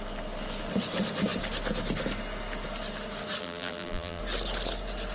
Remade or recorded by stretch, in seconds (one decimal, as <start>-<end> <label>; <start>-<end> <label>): 0.0-3.4 recorded; 3.4-4.2 remade; 4.2-5.1 recorded